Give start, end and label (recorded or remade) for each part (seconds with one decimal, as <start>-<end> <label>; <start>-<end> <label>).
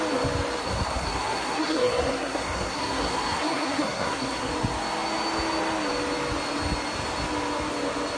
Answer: 0.0-0.6 recorded; 0.6-4.5 remade; 4.5-8.2 recorded